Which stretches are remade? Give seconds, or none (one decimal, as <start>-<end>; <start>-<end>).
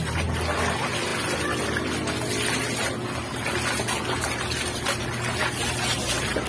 none